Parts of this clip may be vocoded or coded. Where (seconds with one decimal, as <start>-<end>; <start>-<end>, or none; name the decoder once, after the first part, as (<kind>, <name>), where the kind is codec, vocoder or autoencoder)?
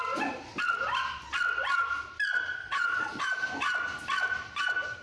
2.6-3.2 (vocoder, WaveNeXt)